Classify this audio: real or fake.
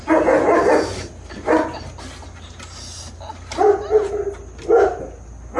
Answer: real